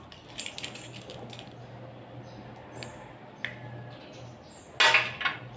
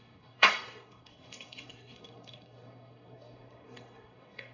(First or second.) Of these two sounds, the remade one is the second